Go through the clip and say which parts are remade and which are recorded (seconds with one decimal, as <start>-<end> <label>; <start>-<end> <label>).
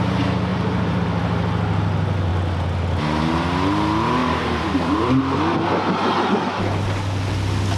0.0-0.5 recorded; 0.5-1.0 remade; 1.0-4.2 recorded; 4.2-5.2 remade; 5.2-7.8 recorded